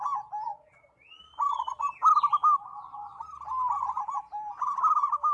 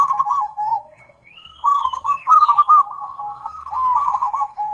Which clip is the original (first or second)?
first